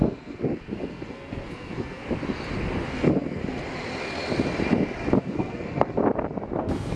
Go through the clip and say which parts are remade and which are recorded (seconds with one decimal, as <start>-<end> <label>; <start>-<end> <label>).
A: 0.0-2.0 remade; 2.0-2.9 recorded; 2.9-3.4 remade; 3.4-5.2 recorded; 5.2-6.0 remade; 6.0-6.6 recorded; 6.6-7.0 remade